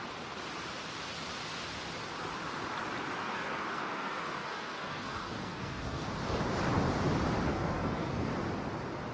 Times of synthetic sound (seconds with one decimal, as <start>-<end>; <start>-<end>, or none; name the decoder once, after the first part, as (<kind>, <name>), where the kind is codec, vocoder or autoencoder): 3.2-6.1 (codec, SNAC); 7.5-8.3